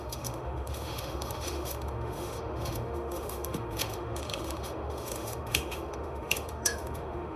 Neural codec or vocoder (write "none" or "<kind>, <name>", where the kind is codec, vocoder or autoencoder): autoencoder, DAC-VAE